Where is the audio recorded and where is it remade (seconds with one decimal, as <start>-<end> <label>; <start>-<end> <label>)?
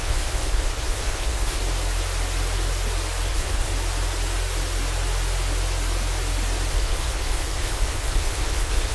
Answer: 0.0-1.6 remade; 1.6-3.3 recorded; 3.3-3.7 remade; 3.7-6.7 recorded; 6.7-8.9 remade